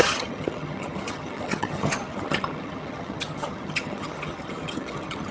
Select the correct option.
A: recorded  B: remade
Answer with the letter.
B